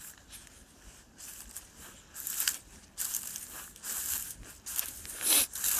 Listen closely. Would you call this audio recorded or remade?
recorded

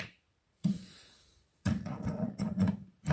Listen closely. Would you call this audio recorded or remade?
remade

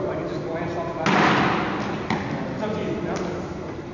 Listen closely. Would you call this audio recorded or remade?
recorded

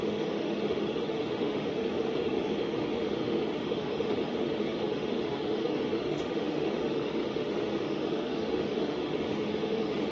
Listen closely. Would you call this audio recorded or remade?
remade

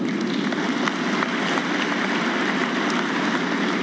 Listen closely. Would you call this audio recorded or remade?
recorded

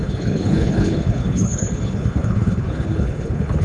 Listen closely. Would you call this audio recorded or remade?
remade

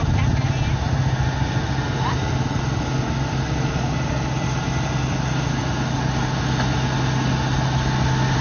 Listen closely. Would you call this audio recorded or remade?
recorded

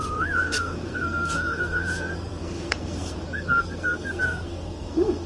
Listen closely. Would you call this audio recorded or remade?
remade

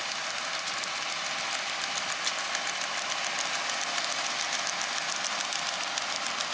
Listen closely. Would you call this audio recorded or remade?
recorded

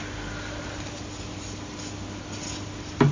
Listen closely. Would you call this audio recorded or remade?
recorded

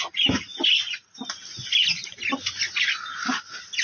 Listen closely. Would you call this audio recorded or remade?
recorded